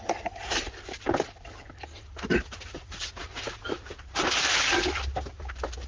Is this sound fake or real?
real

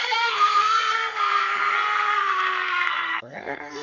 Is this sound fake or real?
fake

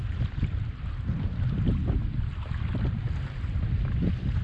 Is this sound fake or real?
real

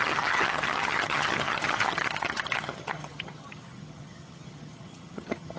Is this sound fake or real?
fake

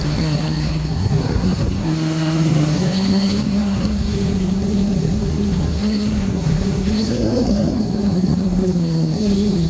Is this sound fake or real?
fake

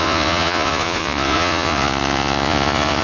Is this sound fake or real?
fake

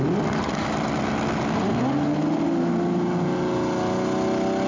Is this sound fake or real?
real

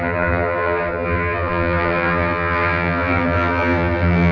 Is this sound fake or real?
fake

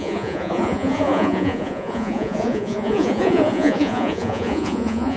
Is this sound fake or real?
fake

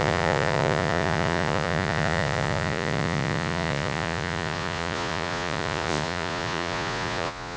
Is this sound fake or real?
fake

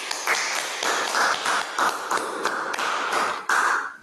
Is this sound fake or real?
real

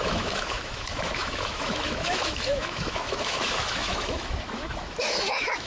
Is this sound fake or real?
fake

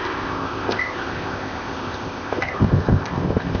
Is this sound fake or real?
fake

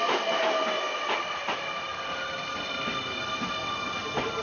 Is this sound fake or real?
real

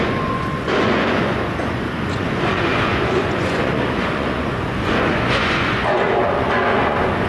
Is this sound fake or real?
fake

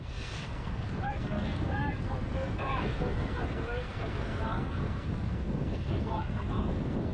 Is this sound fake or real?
fake